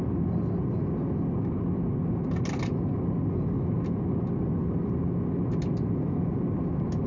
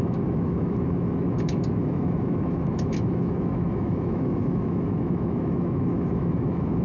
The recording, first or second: first